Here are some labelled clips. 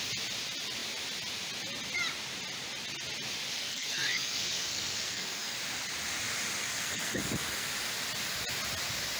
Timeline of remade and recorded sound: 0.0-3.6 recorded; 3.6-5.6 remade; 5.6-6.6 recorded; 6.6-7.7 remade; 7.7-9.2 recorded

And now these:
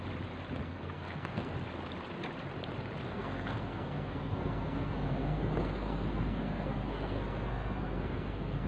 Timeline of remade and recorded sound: 0.0-0.6 recorded; 0.6-1.5 remade; 1.5-3.1 recorded; 3.1-8.7 remade

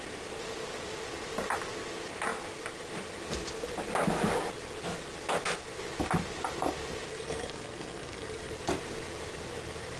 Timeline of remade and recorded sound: 0.0-7.1 recorded; 7.1-8.5 remade; 8.5-10.0 recorded

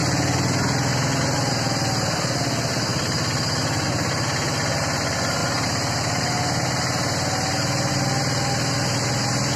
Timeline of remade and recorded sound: 0.0-9.6 recorded

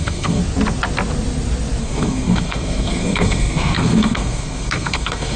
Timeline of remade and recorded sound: 0.0-0.4 remade; 0.4-1.8 recorded; 1.8-5.4 remade